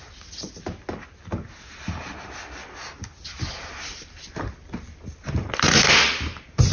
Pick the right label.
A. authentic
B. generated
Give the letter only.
A